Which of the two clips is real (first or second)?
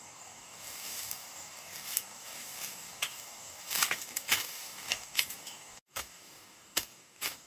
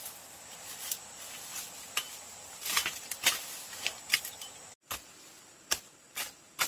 second